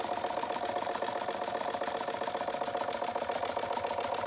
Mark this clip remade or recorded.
recorded